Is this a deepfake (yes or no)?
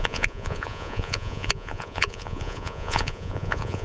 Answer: yes